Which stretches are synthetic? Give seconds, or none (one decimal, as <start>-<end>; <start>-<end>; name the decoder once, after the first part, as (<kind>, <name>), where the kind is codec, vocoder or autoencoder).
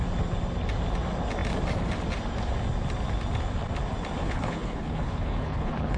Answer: 4.2-6.0 (codec, HILCodec)